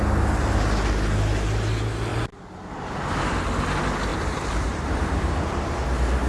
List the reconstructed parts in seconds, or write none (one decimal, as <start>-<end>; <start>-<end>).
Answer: 4.1-5.6